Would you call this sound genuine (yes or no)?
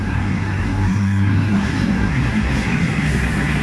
no